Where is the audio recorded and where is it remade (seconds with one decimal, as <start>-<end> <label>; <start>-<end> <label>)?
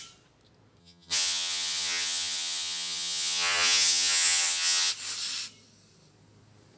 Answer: 0.0-0.8 recorded; 0.8-4.9 remade; 4.9-6.8 recorded